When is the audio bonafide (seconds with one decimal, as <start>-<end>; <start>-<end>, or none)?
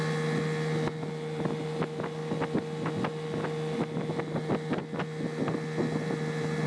0.0-6.7